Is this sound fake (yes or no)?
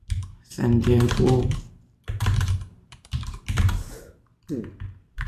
yes